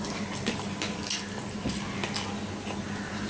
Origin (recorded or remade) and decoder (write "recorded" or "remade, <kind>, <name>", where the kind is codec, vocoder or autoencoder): recorded